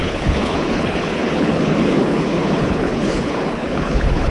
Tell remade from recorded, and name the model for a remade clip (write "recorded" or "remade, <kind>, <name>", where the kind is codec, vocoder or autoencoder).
remade, codec, HILCodec